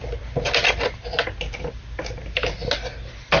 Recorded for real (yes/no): yes